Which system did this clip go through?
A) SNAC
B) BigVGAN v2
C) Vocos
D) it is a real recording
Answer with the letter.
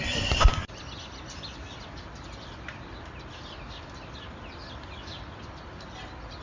D